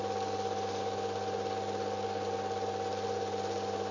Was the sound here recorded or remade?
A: recorded